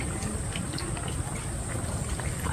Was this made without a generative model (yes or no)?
yes